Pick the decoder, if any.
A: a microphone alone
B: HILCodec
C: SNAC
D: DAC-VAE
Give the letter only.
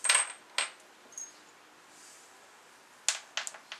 A